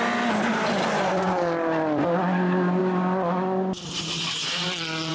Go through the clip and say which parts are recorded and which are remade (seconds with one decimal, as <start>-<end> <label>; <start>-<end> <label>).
0.0-0.5 recorded; 0.5-1.1 remade; 1.1-5.1 recorded